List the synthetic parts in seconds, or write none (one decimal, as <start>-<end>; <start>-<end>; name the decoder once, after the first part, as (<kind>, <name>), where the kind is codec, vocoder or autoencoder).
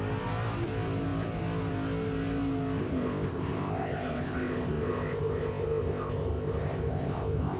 2.8-7.6 (codec, ZipCodec)